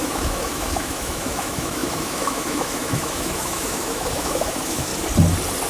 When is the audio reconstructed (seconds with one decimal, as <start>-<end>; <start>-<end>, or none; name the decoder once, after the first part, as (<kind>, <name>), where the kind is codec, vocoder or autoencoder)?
0.0-4.9 (autoencoder, DAC-VAE)